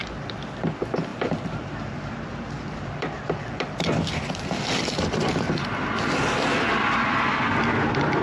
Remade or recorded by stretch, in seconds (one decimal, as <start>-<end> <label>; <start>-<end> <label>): 0.0-1.1 recorded; 1.1-4.8 remade; 4.8-8.2 recorded